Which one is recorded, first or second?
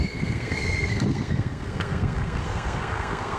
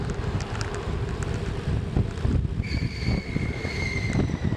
second